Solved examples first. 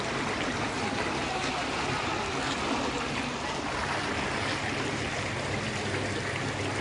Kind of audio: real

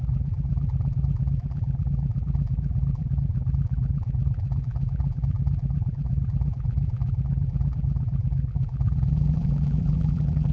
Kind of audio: fake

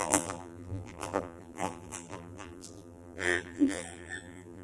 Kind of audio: fake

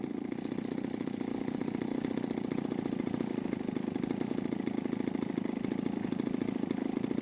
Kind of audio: real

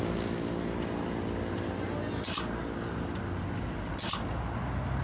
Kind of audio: real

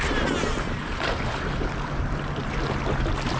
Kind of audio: real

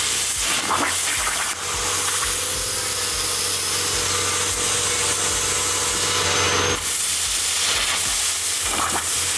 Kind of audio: real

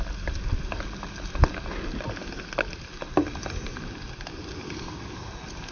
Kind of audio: real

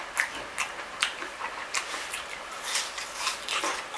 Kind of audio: real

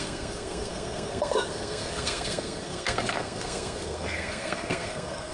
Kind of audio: fake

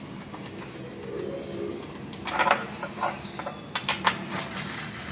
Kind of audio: real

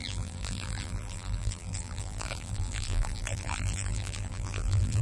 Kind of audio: fake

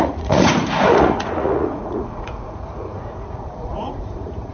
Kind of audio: fake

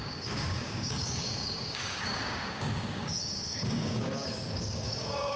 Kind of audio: fake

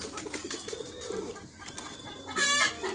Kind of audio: real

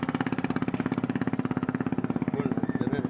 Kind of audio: real